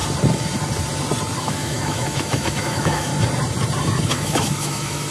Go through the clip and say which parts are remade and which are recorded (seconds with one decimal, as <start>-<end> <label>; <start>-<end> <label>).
0.0-1.4 recorded; 1.4-3.1 remade; 3.1-4.1 recorded; 4.1-5.1 remade